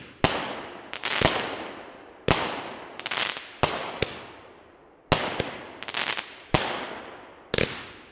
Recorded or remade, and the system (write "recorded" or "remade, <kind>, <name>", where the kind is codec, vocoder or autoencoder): recorded